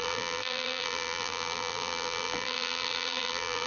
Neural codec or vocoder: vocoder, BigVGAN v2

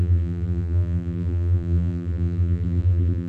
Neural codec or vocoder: vocoder, BigVGAN v2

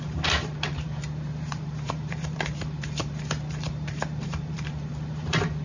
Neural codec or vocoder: vocoder, BigVGAN v2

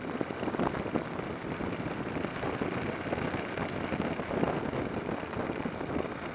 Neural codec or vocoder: none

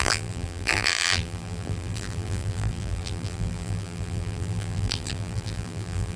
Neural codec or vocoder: vocoder, BigVGAN v2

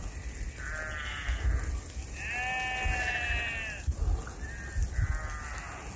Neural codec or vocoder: none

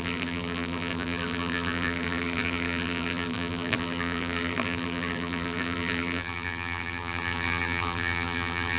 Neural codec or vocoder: vocoder, BigVGAN v2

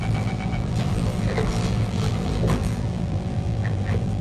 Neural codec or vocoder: vocoder, BigVGAN v2